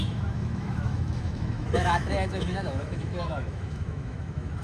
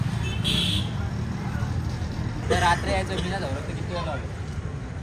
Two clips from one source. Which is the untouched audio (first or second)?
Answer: second